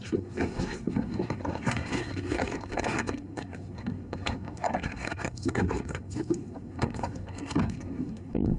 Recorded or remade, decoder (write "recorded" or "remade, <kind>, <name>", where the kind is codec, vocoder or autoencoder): remade, codec, SNAC